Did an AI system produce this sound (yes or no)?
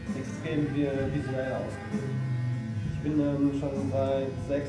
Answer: no